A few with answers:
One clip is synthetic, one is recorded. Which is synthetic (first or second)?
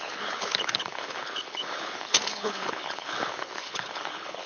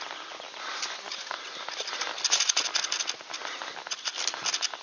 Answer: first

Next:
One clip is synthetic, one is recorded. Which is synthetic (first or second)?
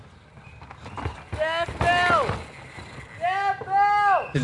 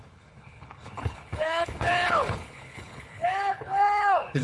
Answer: second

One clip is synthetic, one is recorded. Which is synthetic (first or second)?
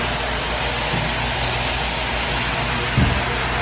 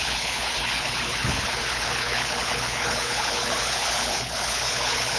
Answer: second